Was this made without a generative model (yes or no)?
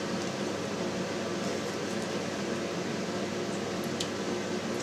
yes